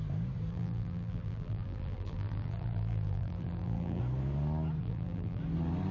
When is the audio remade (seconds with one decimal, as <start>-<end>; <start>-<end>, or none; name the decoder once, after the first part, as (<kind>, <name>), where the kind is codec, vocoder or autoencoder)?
0.5-4.0 (vocoder, BigVGAN v2); 4.8-5.4